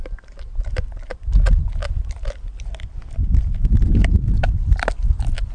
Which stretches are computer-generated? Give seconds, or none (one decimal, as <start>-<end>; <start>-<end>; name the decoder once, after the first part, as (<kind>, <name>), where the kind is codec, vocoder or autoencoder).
none